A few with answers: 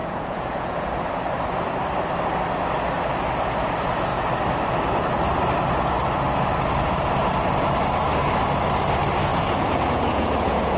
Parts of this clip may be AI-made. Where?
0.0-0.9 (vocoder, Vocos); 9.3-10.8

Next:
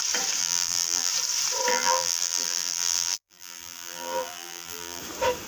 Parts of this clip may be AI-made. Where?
0.4-1.1 (vocoder, BigVGAN v2); 1.7-5.0

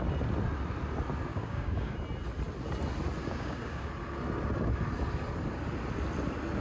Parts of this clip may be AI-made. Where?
1.3-1.9 (codec, DAC); 3.2-3.9

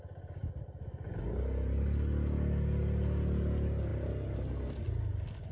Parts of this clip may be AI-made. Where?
none

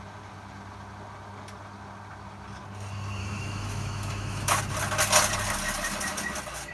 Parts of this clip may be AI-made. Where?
3.2-4.6 (autoencoder, DAC-VAE)